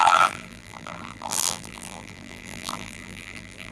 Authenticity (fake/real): fake